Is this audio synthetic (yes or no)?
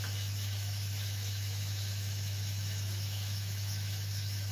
yes